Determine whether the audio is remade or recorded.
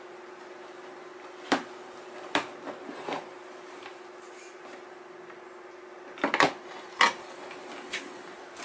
recorded